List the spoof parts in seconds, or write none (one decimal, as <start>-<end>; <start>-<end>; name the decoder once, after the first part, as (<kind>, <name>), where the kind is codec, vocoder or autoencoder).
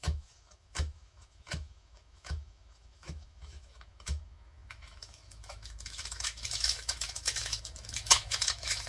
0.0-8.9 (autoencoder, DAC-VAE)